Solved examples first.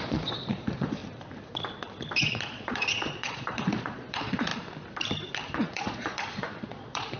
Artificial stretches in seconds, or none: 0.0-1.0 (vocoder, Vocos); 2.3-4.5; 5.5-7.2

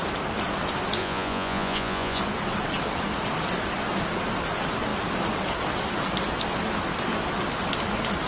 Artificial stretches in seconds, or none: 1.0-2.2 (vocoder, Vocos)

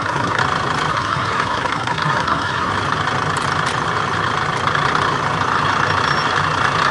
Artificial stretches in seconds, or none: 0.0-0.4 (codec, SNAC); 0.9-2.7

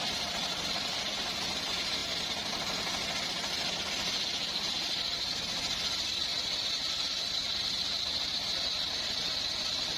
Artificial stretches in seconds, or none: none

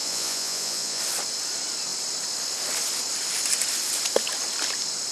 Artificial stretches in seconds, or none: 0.0-1.0 (vocoder, Vocos)

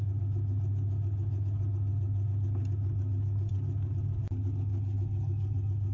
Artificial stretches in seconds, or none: none

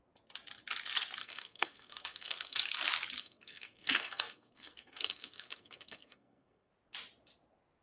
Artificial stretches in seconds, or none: 1.2-2.6 (codec, SNAC); 3.2-6.7